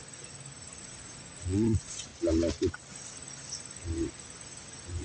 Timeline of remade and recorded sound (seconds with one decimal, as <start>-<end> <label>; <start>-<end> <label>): 0.0-0.8 recorded; 0.8-2.1 remade; 2.1-5.0 recorded